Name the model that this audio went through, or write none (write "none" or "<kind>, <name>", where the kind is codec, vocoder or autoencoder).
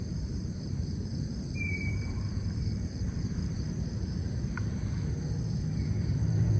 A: vocoder, BigVGAN v2